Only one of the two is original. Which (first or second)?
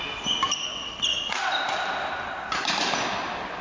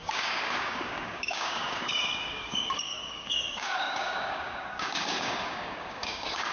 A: first